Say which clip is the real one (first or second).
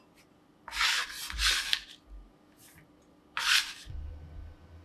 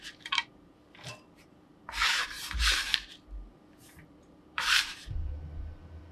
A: first